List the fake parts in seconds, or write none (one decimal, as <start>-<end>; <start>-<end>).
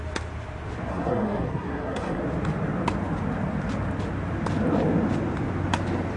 0.9-2.2